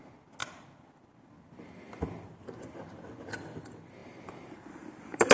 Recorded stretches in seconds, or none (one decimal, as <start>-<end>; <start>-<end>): 0.0-5.3